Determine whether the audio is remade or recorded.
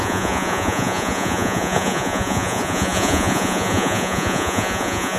remade